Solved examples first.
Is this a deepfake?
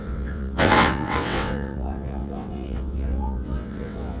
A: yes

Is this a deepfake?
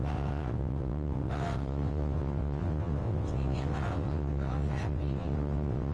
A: yes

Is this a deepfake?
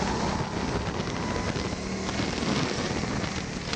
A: no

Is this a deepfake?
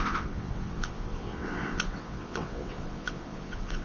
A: yes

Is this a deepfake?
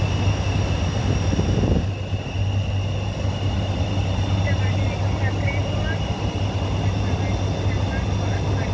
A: no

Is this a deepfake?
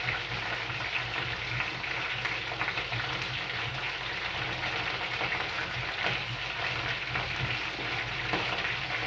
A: no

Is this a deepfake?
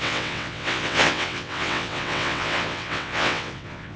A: yes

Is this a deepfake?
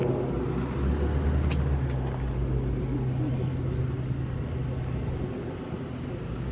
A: no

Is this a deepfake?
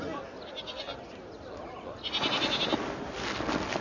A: no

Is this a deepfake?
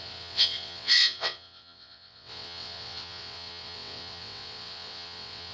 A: yes